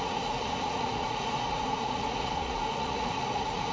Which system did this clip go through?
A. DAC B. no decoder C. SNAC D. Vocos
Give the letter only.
D